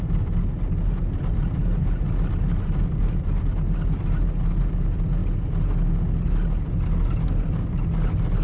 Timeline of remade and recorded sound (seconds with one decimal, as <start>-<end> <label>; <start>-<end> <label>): 0.0-8.4 recorded